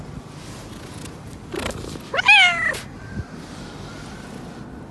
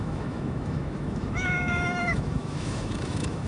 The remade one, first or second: second